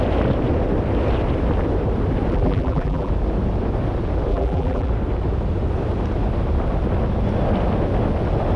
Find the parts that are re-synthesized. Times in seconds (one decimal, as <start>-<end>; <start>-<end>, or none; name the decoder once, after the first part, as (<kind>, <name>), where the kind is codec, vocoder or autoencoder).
2.3-3.1 (vocoder, BigVGAN v2); 4.3-4.9